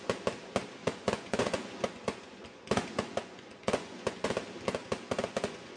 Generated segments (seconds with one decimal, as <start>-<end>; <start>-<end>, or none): 0.8-4.3; 4.8-5.8